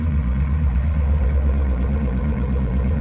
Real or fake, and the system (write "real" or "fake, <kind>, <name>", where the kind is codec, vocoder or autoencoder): fake, vocoder, Vocos